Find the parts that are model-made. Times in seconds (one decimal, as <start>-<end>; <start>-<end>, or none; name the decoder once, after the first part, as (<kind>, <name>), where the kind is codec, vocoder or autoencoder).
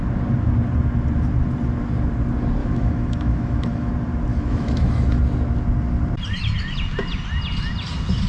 2.6-3.9 (autoencoder, DAC-VAE); 4.3-5.2